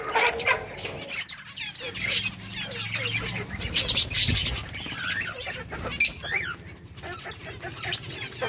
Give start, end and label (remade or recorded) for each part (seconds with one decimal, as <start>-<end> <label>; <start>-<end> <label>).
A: 0.0-8.5 recorded